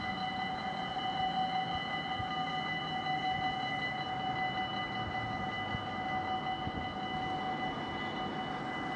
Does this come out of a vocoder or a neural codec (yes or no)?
no